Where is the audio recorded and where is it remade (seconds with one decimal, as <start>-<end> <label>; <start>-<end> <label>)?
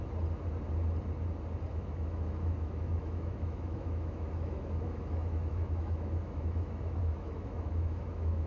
0.0-1.7 recorded; 1.7-8.5 remade